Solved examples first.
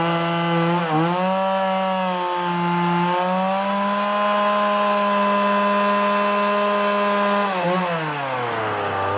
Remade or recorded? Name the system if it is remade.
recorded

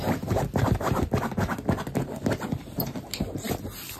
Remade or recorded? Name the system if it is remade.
recorded